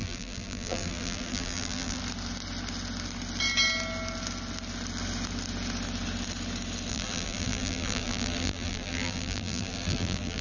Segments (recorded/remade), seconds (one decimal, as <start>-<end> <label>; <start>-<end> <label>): 0.0-2.0 remade; 2.0-6.9 recorded; 6.9-10.4 remade

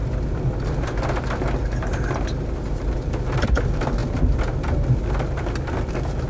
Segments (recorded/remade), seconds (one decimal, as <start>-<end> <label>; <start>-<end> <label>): 0.0-6.3 recorded

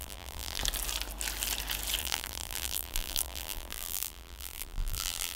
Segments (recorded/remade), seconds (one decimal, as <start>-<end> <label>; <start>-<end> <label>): 0.0-0.6 remade; 0.6-2.0 recorded; 2.0-5.4 remade

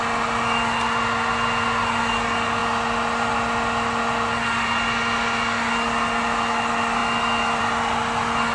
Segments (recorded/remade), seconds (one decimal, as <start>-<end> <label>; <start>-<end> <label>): 0.0-8.5 recorded